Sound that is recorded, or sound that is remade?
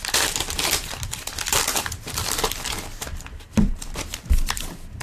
remade